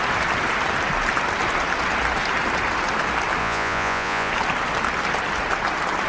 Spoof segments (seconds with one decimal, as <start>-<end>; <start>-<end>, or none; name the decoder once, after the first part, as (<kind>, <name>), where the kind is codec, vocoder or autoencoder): 3.4-4.3 (vocoder, Vocos)